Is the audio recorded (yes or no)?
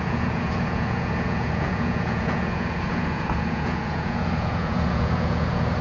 no